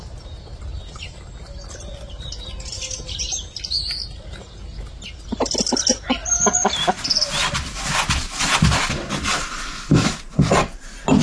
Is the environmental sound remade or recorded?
recorded